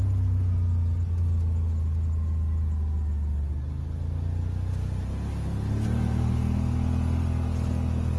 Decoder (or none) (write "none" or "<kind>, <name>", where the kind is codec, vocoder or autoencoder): none